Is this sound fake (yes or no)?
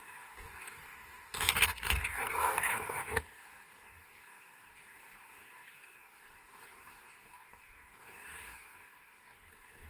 yes